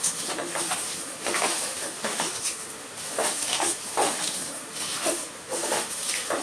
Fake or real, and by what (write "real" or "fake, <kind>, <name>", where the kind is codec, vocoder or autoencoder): fake, autoencoder, DAC-VAE